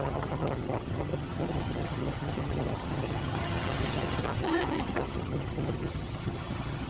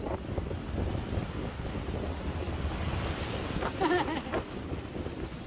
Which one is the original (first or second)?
second